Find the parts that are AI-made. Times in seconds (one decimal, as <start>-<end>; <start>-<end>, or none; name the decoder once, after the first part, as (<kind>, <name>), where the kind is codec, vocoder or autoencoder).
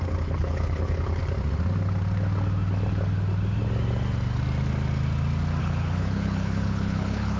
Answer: 0.0-1.2 (codec, HILCodec); 5.6-7.4